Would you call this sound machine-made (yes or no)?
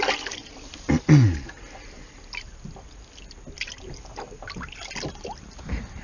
no